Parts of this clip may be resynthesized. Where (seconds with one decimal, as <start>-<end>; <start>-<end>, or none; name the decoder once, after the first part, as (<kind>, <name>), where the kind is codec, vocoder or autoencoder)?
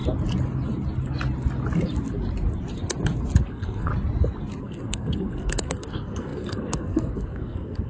3.4-3.9 (codec, SNAC); 4.6-7.9